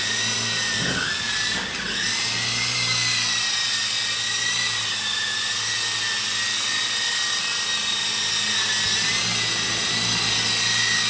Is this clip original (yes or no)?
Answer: yes